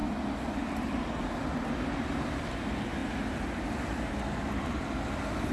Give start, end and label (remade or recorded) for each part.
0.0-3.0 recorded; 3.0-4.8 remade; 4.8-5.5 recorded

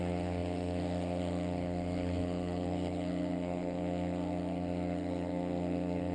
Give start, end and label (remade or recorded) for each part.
0.0-6.1 remade